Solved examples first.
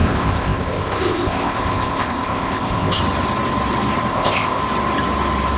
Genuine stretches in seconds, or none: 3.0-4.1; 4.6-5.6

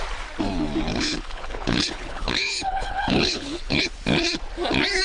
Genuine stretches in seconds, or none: 0.0-0.9; 3.9-5.0

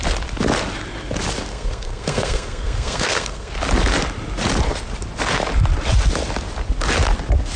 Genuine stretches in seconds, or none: 0.0-1.5; 3.5-7.6

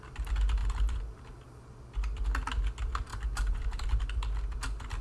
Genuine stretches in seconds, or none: 0.0-0.6; 1.2-3.1; 4.0-5.0

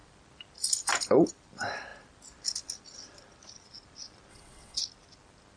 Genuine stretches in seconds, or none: 0.0-4.3; 4.8-5.6

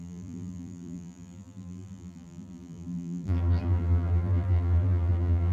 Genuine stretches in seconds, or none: none

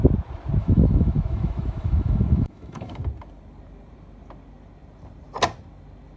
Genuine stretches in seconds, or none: 0.0-0.6; 3.0-6.2

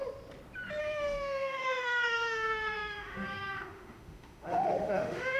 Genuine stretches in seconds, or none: 0.0-0.8